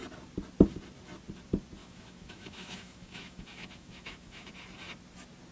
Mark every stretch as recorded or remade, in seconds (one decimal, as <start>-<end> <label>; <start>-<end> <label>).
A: 0.0-1.8 recorded; 1.8-4.5 remade; 4.5-5.5 recorded